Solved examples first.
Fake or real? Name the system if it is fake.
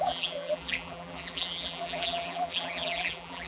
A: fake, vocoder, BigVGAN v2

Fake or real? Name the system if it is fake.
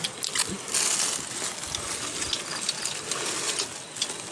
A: real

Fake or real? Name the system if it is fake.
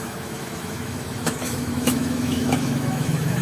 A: fake, autoencoder, DAC-VAE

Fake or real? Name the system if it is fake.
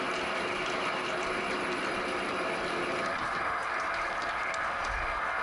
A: real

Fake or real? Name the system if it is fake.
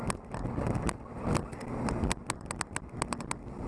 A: real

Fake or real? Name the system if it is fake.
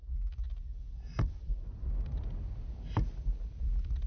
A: real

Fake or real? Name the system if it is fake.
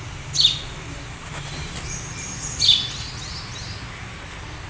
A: real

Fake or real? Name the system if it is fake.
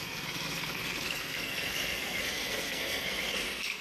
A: fake, codec, SNAC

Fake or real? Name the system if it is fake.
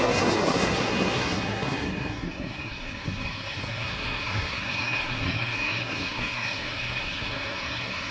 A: fake, codec, SNAC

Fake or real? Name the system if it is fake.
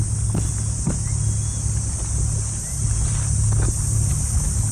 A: real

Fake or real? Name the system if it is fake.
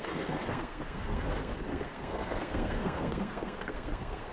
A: fake, codec, SNAC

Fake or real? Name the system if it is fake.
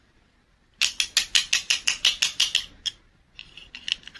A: real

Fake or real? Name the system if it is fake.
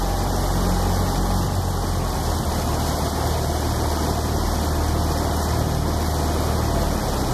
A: real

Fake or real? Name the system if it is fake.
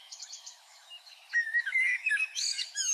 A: fake, autoencoder, DAC-VAE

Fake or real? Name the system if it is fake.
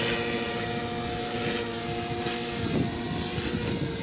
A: real